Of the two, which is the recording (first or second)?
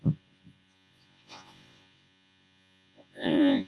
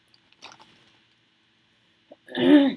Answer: second